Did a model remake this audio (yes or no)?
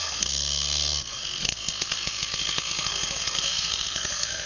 yes